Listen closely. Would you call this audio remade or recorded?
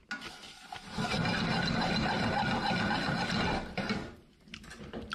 recorded